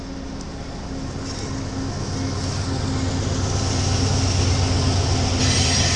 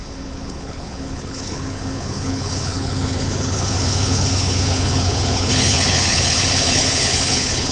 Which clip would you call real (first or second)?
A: first